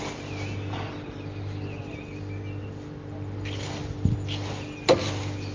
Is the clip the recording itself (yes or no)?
yes